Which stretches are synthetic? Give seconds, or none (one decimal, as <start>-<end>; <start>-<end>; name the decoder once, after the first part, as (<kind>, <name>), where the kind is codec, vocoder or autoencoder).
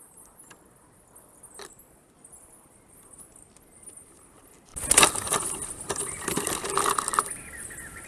none